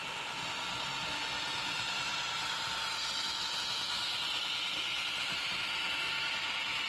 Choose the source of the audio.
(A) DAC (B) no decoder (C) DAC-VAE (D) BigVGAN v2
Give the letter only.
B